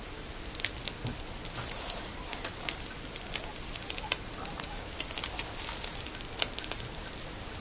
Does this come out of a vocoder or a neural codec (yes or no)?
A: no